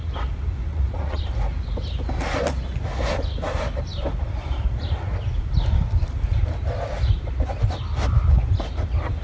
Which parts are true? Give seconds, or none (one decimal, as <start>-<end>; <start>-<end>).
0.0-0.7; 1.2-9.2